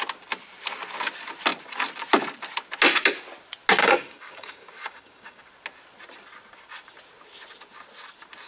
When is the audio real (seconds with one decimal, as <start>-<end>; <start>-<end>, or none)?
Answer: 0.0-3.8; 5.4-8.5